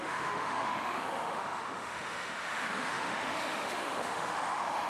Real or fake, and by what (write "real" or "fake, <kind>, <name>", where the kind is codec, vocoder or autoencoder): fake, autoencoder, DAC-VAE